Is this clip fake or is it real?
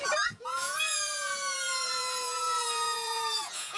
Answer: fake